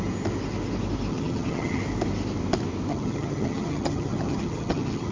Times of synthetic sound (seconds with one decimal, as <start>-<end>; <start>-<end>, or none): 1.1-1.8; 2.9-5.1